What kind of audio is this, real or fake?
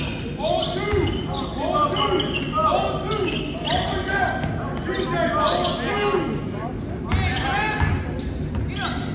real